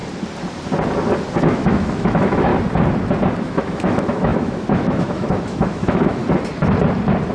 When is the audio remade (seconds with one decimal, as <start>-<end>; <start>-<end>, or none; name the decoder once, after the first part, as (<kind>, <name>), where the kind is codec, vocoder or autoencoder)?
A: 1.4-2.5 (autoencoder, DAC-VAE); 3.4-6.2